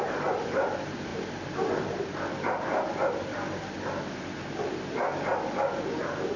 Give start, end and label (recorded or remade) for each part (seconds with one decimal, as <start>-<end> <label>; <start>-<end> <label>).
0.0-6.4 recorded